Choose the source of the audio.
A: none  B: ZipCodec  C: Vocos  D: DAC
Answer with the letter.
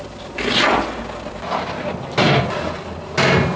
A